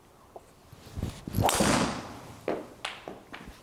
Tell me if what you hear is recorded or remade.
recorded